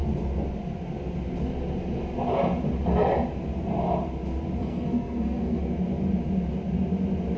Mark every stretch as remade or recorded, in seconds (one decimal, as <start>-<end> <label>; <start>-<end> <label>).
0.0-4.6 recorded; 4.6-5.6 remade; 5.6-7.4 recorded